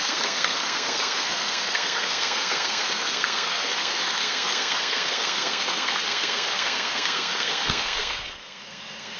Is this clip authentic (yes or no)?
no